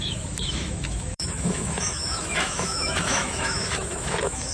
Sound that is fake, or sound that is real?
fake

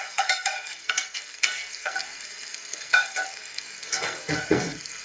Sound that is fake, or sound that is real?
fake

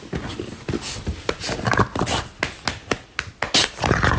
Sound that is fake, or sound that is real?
real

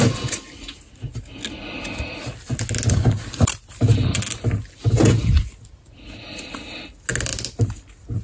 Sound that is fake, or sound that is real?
real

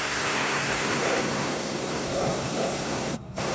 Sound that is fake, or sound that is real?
fake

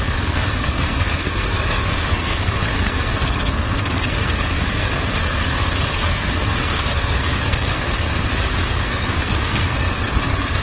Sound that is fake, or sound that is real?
fake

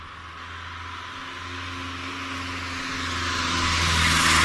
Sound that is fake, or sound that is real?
real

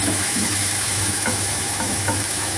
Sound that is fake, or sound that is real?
fake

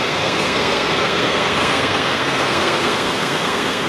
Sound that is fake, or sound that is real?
fake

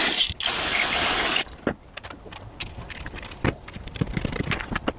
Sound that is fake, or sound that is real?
real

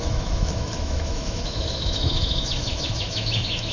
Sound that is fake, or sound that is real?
fake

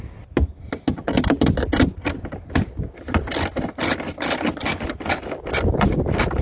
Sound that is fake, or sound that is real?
real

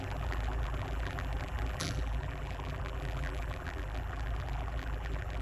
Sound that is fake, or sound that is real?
fake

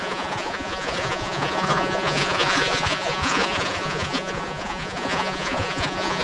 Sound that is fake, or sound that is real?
fake